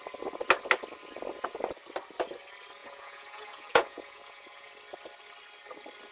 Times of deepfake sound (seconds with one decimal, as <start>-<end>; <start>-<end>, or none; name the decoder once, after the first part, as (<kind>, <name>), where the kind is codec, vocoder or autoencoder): 2.8-4.7 (vocoder, Vocos)